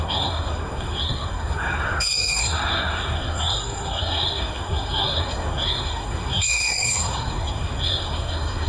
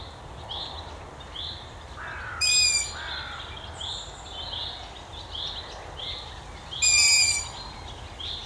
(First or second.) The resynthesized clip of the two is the first